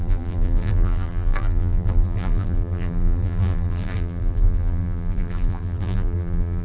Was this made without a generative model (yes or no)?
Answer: no